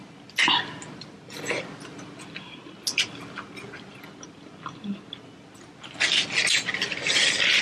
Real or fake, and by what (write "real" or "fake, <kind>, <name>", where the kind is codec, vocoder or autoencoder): real